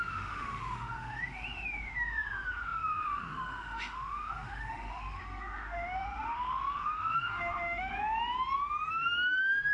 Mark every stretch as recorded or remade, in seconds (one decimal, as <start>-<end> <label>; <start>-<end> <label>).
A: 0.0-7.9 remade; 7.9-8.9 recorded; 8.9-9.7 remade